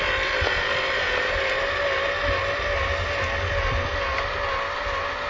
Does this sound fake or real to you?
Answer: real